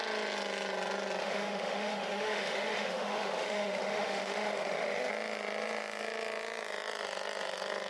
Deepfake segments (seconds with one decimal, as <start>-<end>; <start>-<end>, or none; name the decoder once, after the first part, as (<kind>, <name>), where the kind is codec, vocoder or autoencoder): 1.2-5.1 (autoencoder, DAC-VAE)